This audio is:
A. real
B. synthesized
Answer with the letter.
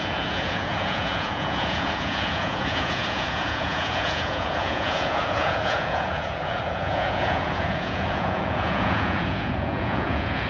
B